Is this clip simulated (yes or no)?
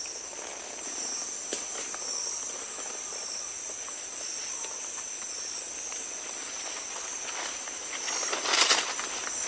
no